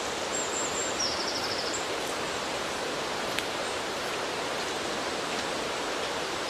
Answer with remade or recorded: remade